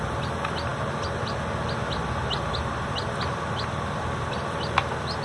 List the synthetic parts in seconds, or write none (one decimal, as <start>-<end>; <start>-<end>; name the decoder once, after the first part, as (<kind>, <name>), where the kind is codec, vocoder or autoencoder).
none